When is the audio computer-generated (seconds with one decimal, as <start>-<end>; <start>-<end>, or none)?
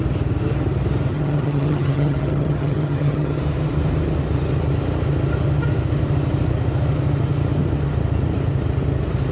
1.1-3.4